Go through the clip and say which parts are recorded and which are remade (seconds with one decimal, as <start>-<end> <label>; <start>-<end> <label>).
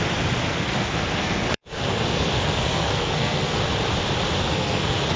0.0-0.5 recorded; 0.5-3.6 remade; 3.6-4.4 recorded; 4.4-5.2 remade